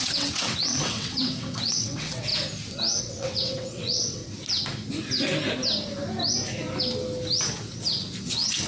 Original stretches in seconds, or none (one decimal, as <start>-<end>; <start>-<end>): 2.3-3.0; 4.2-8.2